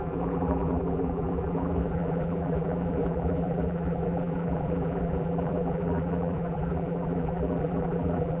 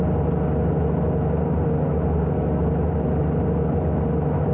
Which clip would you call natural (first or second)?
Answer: second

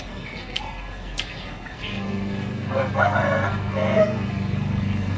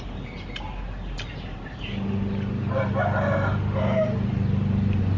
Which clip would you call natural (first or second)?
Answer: second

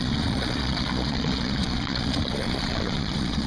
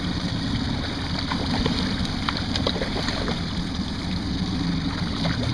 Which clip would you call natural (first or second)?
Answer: second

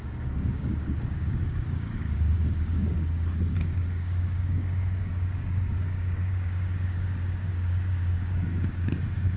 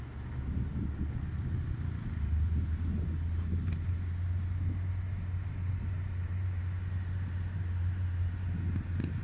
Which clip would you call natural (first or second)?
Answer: second